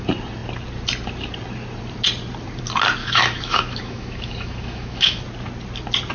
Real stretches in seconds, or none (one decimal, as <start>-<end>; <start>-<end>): 0.0-3.0; 5.2-6.1